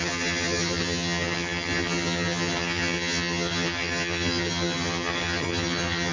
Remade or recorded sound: remade